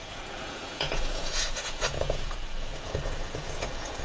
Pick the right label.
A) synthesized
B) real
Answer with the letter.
A